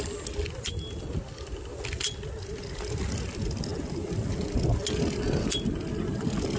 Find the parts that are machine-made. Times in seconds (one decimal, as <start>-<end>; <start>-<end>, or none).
none